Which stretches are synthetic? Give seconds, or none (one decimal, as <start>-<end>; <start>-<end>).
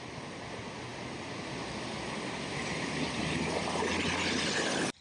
none